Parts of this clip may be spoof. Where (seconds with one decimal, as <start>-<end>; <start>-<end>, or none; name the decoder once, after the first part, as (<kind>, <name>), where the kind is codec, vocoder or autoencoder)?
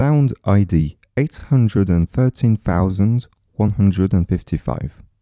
1.4-4.3 (vocoder, BigVGAN v2)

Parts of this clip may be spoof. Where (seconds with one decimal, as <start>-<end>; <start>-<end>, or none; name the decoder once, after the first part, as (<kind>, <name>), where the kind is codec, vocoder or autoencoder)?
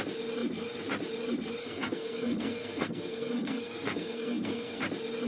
1.6-4.8 (codec, SNAC)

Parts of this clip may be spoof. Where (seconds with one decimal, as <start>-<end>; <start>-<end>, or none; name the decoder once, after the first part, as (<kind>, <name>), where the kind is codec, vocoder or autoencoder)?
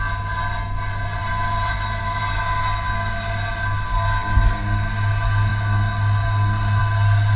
none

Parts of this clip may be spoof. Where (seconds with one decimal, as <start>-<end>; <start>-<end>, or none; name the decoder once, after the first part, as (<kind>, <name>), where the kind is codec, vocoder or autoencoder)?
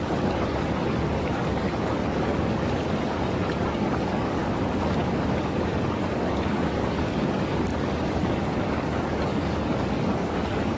0.0-4.4 (codec, DAC); 5.2-10.8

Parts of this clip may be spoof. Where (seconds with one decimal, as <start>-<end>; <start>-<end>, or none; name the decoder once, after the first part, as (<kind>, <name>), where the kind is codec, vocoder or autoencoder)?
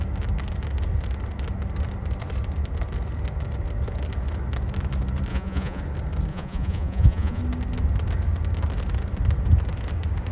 5.3-5.8 (vocoder, Vocos); 6.3-7.4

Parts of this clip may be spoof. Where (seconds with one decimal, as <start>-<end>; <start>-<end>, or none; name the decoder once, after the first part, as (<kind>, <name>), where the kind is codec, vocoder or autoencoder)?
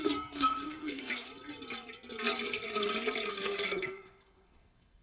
0.0-1.3 (codec, SNAC); 3.3-5.0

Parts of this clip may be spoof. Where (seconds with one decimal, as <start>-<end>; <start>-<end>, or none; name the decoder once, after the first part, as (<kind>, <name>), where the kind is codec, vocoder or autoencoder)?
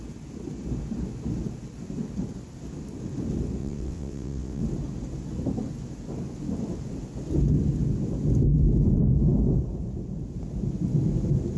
3.6-4.6 (vocoder, WaveNeXt)